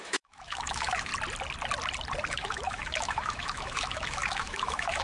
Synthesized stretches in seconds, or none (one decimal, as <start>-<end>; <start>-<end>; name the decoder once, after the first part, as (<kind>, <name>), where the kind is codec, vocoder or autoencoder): 0.0-1.1 (autoencoder, DAC-VAE); 2.3-5.0